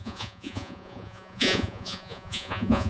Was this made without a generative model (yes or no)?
no